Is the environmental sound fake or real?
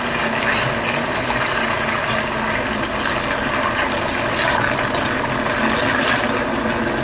real